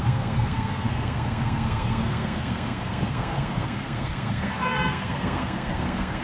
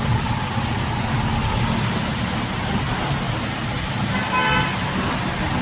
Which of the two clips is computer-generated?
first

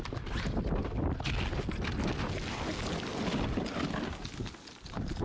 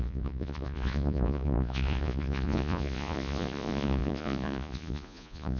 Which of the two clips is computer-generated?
second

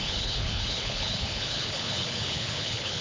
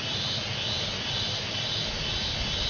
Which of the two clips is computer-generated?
first